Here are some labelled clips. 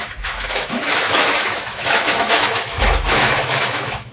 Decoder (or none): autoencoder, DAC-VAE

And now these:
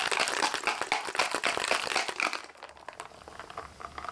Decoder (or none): none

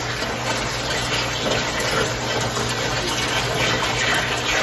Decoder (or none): none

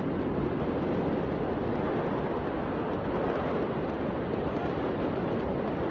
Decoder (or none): none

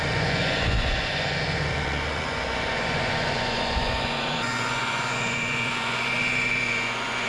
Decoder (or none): vocoder, Vocos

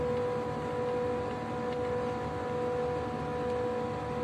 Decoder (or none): none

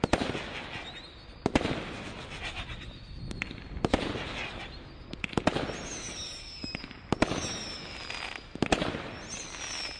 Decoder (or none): none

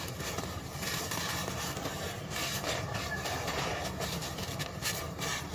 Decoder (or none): vocoder, BigVGAN v2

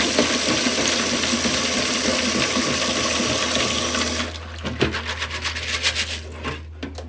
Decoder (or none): none